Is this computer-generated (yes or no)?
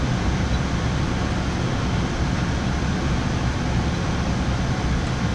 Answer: no